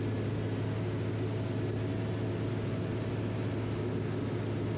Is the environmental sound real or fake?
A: real